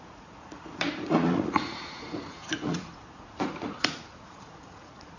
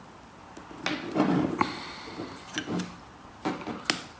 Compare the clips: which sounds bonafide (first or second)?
second